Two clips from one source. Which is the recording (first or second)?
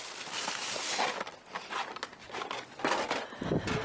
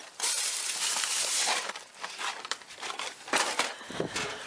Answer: first